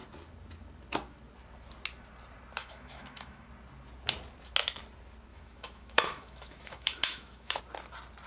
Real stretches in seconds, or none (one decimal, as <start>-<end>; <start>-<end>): 0.0-2.6; 3.5-5.3; 7.6-8.3